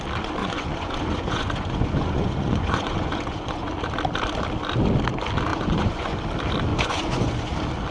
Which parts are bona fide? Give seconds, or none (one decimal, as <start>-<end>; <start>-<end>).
0.0-0.4; 3.7-5.5; 6.2-6.7; 7.5-7.9